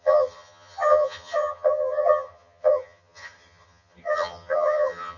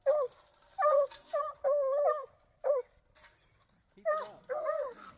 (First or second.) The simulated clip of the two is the first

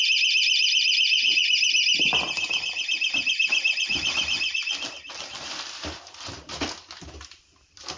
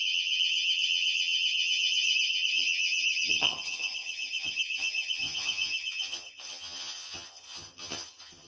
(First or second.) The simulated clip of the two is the second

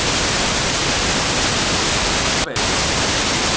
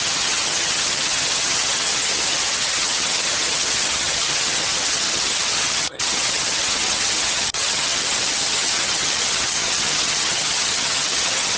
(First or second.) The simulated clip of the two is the second